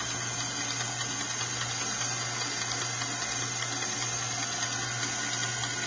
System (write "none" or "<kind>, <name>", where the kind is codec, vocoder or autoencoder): none